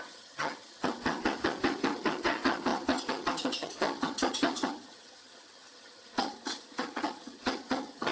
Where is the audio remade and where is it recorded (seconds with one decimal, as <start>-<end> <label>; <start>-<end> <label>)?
0.0-8.1 remade